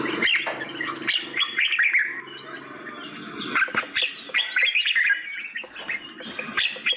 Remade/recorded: recorded